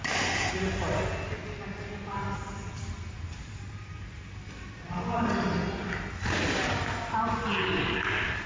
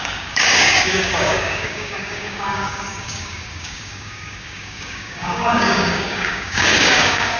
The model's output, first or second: second